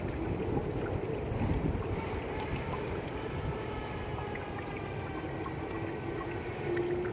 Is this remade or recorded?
recorded